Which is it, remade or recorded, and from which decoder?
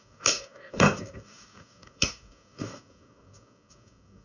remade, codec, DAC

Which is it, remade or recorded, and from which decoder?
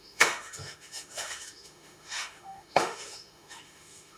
remade, autoencoder, DAC-VAE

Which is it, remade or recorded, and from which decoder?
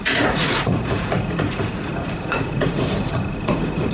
remade, vocoder, Vocos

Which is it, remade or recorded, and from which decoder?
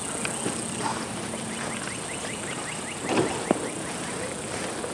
recorded